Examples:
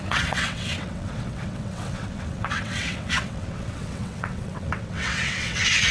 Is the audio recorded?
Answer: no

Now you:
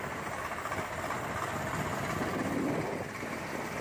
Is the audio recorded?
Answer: yes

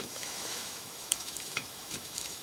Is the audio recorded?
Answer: no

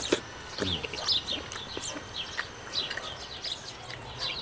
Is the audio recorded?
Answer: yes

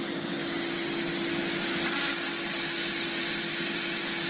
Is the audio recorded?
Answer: yes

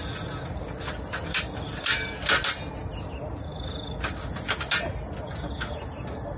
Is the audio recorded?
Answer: yes